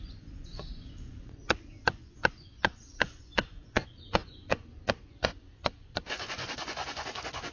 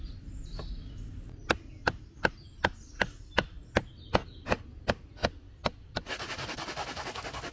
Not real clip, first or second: first